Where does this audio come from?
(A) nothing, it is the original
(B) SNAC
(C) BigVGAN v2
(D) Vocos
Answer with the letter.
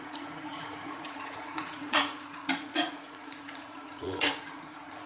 D